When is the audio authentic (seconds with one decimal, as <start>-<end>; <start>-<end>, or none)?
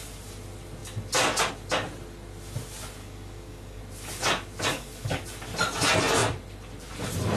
0.0-3.0; 3.8-4.7; 5.2-7.4